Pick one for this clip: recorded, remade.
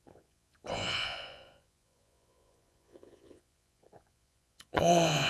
remade